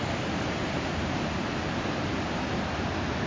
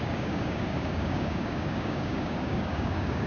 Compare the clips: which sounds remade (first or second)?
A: second